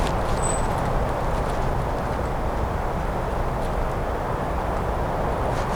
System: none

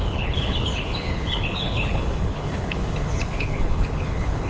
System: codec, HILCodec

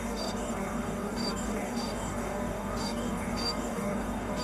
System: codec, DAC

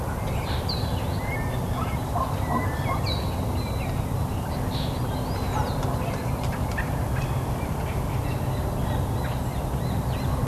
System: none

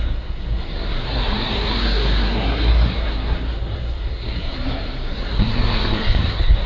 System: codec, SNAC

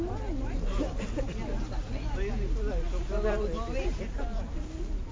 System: none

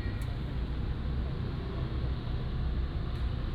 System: none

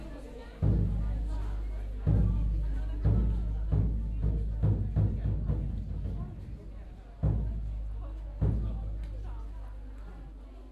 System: none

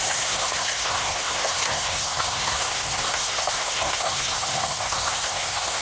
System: codec, SNAC